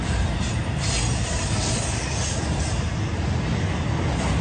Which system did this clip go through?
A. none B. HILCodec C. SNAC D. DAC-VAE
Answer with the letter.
A